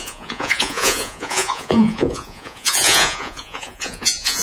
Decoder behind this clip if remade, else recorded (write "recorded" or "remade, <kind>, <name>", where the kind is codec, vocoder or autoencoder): remade, vocoder, Vocos